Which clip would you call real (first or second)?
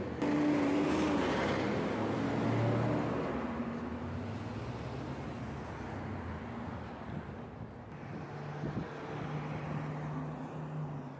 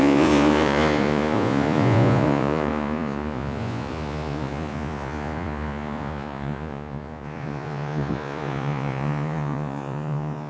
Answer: first